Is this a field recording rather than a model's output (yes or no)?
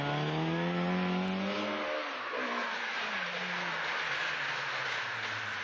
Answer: yes